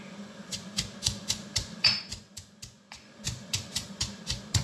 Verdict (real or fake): fake